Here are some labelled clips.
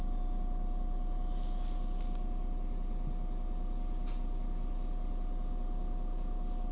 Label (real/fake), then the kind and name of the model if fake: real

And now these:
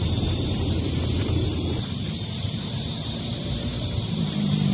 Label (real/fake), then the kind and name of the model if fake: fake, vocoder, BigVGAN v2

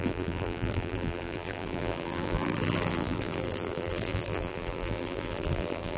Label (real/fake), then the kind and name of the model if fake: fake, vocoder, BigVGAN v2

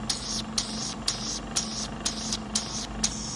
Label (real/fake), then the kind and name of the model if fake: real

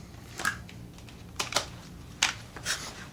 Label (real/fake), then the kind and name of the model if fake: fake, vocoder, BigVGAN v2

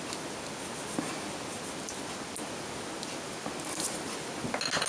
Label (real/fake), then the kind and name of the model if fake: real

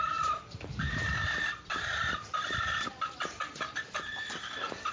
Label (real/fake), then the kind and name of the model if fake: fake, vocoder, BigVGAN v2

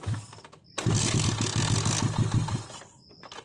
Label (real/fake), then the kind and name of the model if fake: real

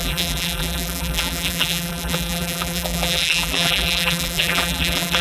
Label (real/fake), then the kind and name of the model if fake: fake, vocoder, BigVGAN v2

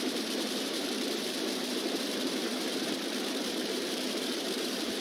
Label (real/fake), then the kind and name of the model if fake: fake, vocoder, BigVGAN v2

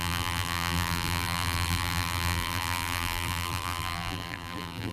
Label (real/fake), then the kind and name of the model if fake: fake, vocoder, BigVGAN v2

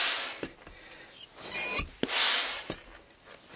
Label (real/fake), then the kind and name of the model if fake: real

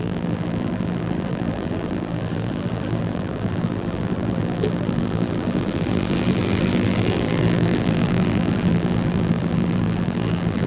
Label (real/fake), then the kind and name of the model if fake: fake, vocoder, BigVGAN v2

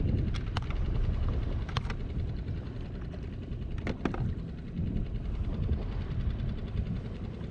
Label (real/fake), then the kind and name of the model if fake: real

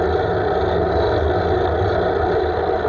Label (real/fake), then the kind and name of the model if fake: real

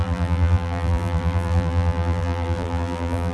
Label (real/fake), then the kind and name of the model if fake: fake, vocoder, BigVGAN v2